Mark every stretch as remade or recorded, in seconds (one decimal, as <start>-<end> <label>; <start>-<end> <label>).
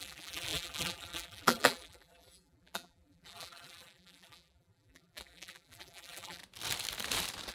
0.0-6.4 remade; 6.4-7.5 recorded